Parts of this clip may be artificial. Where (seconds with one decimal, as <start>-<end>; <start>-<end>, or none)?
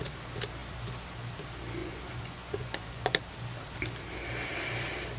1.8-3.2